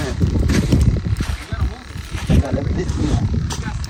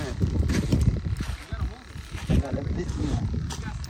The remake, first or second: first